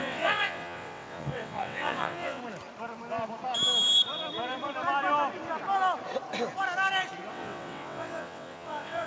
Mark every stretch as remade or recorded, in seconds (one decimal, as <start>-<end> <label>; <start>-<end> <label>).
0.0-2.4 remade; 2.4-7.3 recorded; 7.3-9.1 remade